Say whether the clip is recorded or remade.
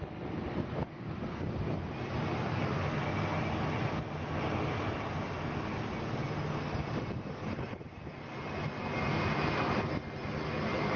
recorded